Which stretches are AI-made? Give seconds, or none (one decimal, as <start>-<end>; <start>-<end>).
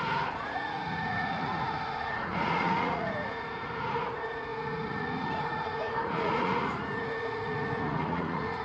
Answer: 0.0-8.6